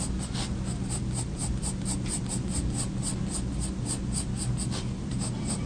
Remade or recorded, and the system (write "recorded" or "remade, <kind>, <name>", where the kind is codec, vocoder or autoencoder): recorded